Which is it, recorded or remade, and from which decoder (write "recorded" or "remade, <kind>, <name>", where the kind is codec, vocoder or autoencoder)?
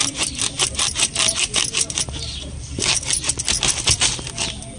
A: recorded